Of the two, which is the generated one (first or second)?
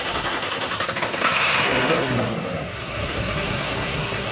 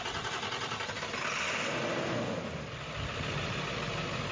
first